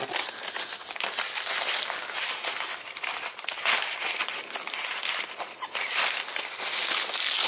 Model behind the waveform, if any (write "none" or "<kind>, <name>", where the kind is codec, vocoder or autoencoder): none